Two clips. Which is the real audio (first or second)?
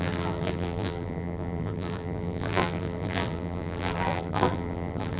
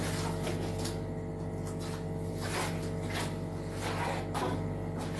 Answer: second